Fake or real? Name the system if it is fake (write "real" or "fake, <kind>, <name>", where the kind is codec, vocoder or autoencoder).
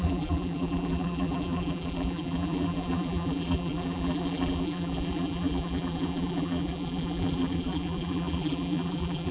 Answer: fake, vocoder, BigVGAN v2